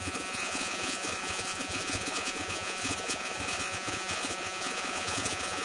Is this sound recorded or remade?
remade